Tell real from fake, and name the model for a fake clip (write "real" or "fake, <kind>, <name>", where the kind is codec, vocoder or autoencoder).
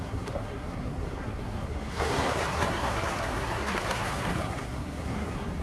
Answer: fake, codec, SNAC